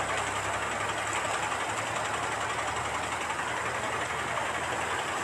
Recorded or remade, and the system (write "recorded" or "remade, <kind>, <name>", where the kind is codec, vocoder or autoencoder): recorded